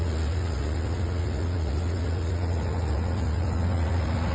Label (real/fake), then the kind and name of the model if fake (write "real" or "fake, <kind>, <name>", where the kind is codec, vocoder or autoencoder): fake, vocoder, Vocos